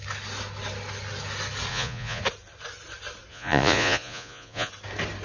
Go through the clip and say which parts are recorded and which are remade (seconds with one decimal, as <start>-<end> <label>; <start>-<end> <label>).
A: 0.0-1.7 recorded; 1.7-2.2 remade; 2.2-3.3 recorded; 3.3-4.7 remade; 4.7-5.2 recorded